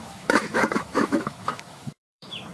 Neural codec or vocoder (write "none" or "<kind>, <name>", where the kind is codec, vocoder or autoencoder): autoencoder, DAC-VAE